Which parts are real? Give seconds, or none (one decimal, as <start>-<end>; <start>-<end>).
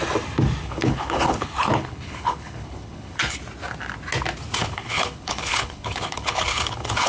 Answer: 0.0-0.6; 3.4-4.6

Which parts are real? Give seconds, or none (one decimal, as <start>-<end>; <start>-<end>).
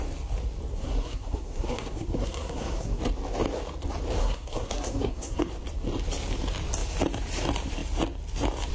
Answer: 0.0-0.7; 3.0-4.2; 5.5-8.7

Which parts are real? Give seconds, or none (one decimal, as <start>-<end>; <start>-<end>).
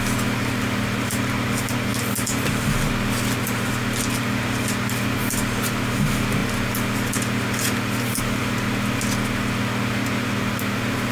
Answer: 0.0-11.1